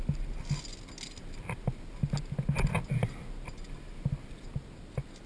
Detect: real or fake real